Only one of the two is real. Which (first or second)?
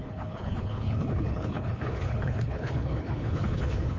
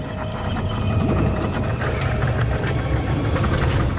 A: second